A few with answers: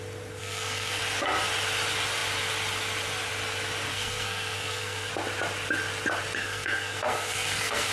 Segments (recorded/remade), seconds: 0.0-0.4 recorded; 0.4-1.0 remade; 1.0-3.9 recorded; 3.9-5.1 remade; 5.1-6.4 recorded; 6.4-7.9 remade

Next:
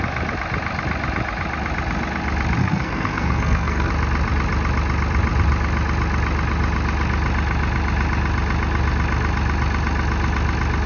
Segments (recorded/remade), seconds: 0.0-2.6 recorded; 2.6-3.9 remade; 3.9-10.9 recorded

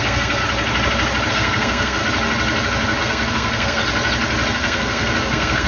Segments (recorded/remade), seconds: 0.0-0.4 remade; 0.4-1.3 recorded; 1.3-2.0 remade; 2.0-3.0 recorded; 3.0-3.8 remade; 3.8-4.6 recorded; 4.6-5.7 remade

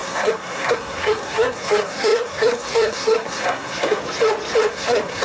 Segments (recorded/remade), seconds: 0.0-4.0 remade; 4.0-4.7 recorded; 4.7-5.2 remade

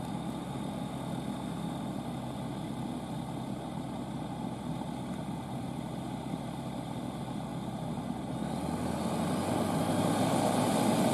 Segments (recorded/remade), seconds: 0.0-11.1 recorded

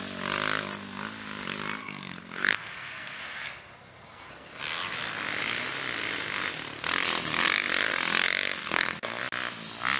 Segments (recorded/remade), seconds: 0.0-1.8 recorded; 1.8-4.6 remade; 4.6-8.6 recorded; 8.6-9.2 remade; 9.2-10.0 recorded